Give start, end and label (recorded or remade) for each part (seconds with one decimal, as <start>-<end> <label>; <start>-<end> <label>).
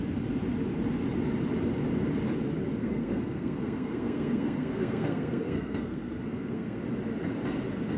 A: 0.0-2.8 recorded; 2.8-6.8 remade; 6.8-8.0 recorded